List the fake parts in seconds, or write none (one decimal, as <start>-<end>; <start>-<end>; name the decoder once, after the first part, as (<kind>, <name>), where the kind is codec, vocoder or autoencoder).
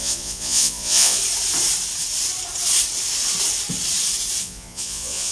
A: 0.0-1.2 (vocoder, Vocos); 4.4-5.3